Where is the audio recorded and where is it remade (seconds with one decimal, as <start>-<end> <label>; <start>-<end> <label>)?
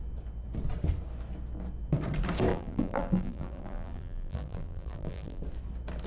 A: 0.0-2.5 recorded; 2.5-5.4 remade; 5.4-6.1 recorded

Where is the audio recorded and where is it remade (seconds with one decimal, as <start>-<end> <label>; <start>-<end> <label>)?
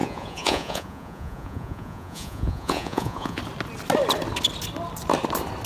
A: 0.0-3.4 remade; 3.4-5.7 recorded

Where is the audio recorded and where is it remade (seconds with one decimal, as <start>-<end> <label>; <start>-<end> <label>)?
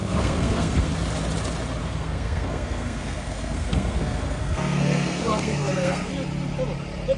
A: 0.0-0.9 remade; 0.9-1.8 recorded; 1.8-6.1 remade; 6.1-7.2 recorded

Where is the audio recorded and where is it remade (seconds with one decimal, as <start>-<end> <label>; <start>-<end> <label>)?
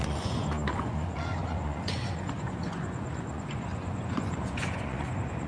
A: 0.0-5.5 remade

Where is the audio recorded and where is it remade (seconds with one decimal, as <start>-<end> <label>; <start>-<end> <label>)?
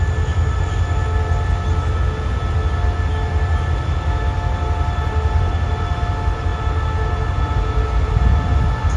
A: 0.0-9.0 recorded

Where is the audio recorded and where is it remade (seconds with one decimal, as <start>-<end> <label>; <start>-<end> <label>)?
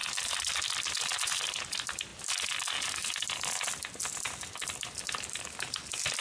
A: 0.0-6.2 recorded